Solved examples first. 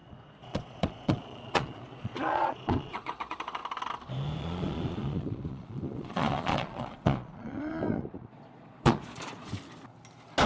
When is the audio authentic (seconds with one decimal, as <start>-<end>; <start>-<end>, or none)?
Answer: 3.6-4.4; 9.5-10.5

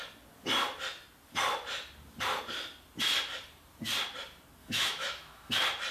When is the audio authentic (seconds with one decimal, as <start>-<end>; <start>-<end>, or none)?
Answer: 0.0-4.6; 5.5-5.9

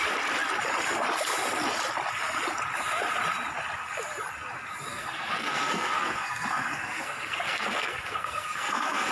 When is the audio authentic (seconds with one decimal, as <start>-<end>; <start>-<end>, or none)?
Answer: 0.0-4.9